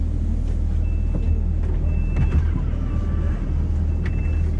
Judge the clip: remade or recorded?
recorded